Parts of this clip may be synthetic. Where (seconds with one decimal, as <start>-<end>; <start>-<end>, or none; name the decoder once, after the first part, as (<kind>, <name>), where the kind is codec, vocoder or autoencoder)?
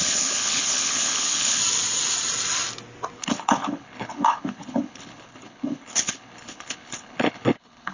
0.0-1.6 (codec, HILCodec); 3.2-7.9